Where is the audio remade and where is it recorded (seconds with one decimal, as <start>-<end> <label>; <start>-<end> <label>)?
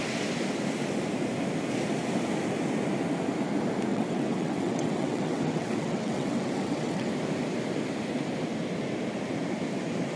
0.0-3.9 recorded; 3.9-7.1 remade; 7.1-10.2 recorded